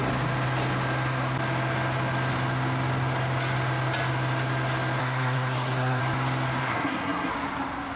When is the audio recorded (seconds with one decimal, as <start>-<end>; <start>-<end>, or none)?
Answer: 0.0-5.0; 6.0-6.6; 7.3-8.0